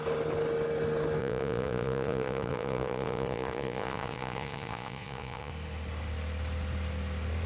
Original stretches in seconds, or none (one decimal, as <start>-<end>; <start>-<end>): 0.0-1.2; 5.5-7.5